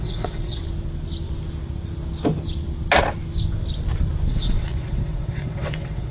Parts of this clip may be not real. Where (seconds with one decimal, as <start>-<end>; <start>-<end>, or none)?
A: 0.0-0.6; 4.3-6.1